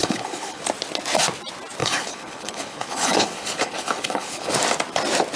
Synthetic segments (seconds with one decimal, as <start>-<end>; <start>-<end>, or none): 0.0-0.6; 1.8-4.5